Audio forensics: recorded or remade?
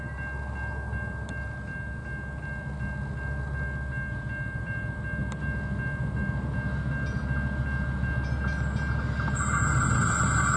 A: recorded